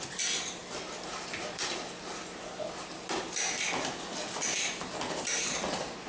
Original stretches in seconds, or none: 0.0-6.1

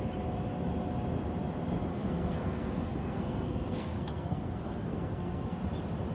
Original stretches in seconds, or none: 0.0-1.9; 5.6-6.1

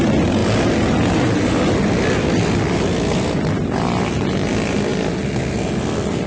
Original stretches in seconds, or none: 0.0-6.3

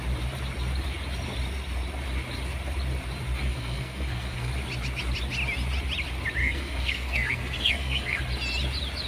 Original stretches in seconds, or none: 0.0-3.5; 4.5-6.4; 8.2-9.1

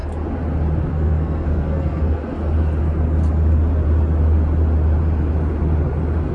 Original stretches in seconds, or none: 0.0-0.9; 2.2-6.3

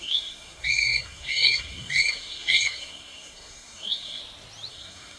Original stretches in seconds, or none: 4.2-4.7

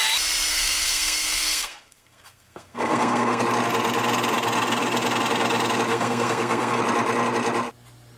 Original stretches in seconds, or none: 0.0-0.5; 3.4-5.9; 6.8-8.2